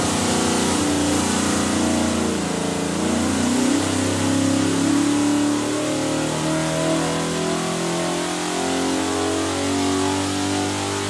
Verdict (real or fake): real